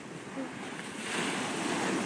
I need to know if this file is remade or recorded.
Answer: recorded